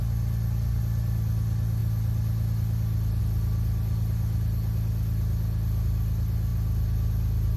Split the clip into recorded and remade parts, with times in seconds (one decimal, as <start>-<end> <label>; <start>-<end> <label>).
0.0-7.6 recorded